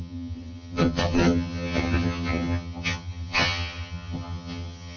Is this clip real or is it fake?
fake